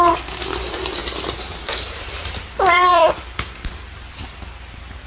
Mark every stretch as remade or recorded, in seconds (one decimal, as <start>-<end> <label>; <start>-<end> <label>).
0.0-1.0 remade; 1.0-1.6 recorded; 1.6-5.1 remade